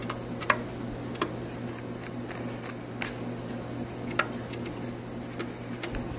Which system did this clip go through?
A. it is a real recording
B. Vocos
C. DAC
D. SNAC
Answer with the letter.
A